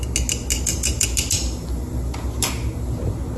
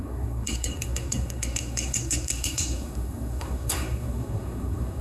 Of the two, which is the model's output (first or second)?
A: second